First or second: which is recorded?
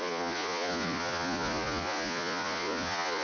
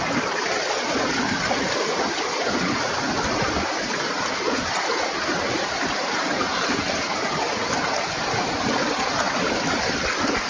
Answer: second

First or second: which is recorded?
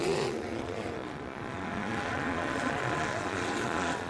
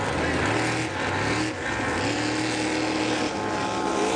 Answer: second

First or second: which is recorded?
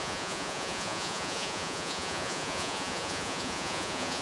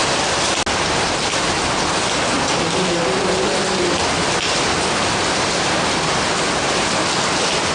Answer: second